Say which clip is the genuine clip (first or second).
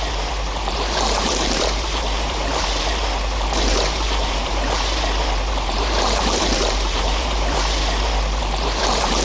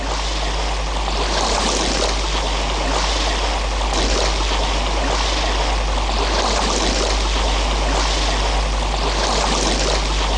second